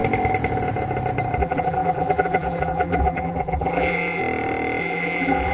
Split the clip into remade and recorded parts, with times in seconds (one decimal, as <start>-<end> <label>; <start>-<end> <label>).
0.0-1.4 recorded; 1.4-4.2 remade; 4.2-4.8 recorded; 4.8-5.5 remade